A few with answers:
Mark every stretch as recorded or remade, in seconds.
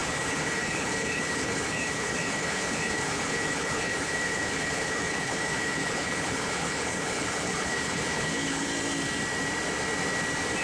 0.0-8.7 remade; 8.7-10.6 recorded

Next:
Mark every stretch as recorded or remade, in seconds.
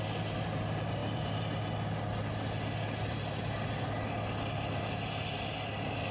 0.0-6.1 recorded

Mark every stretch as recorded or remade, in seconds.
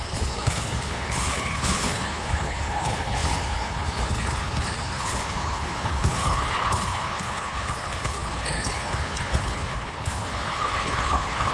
0.0-11.5 remade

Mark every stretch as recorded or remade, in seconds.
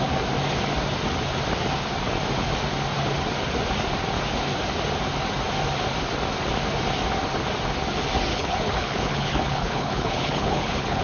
0.0-8.3 recorded; 8.3-11.0 remade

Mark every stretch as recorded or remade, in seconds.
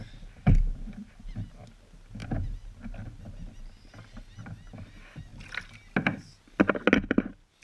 0.0-7.6 recorded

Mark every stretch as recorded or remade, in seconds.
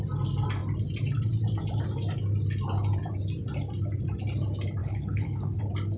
0.0-4.8 recorded; 4.8-5.6 remade; 5.6-6.0 recorded